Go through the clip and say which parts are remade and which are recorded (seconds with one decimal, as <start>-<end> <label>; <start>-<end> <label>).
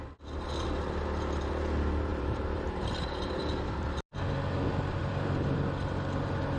0.0-2.1 recorded; 2.1-3.4 remade; 3.4-5.0 recorded; 5.0-5.6 remade; 5.6-6.6 recorded